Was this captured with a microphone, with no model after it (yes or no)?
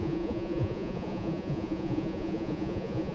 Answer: no